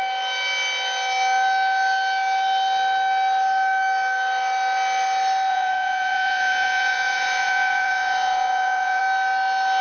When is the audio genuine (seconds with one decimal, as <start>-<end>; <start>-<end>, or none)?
0.0-5.5; 9.0-9.8